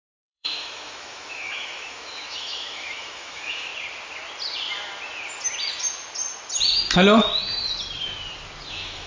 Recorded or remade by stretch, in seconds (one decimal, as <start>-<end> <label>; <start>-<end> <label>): 0.0-3.7 remade; 3.7-8.7 recorded; 8.7-9.1 remade